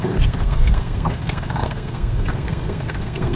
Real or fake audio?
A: fake